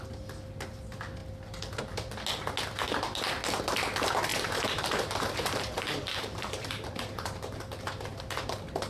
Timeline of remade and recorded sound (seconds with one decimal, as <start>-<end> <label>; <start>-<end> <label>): 0.0-4.3 recorded; 4.3-7.6 remade; 7.6-8.9 recorded